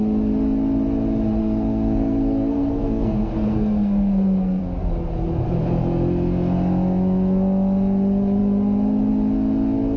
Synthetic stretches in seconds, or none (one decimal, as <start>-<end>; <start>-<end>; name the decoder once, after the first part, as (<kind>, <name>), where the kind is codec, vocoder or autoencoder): 1.4-4.6 (codec, SNAC)